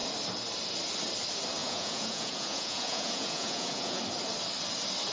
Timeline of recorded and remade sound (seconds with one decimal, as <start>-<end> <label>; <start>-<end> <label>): 0.0-1.6 recorded; 1.6-4.0 remade; 4.0-5.1 recorded